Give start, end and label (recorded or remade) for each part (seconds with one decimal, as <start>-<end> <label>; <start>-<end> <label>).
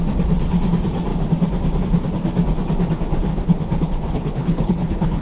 0.0-3.3 recorded; 3.3-5.2 remade